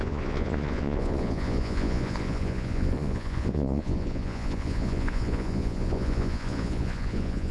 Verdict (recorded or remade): remade